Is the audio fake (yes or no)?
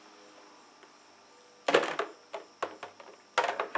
no